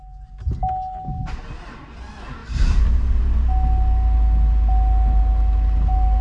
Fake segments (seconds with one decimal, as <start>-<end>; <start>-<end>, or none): 2.4-3.2